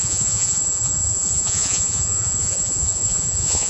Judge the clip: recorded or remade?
remade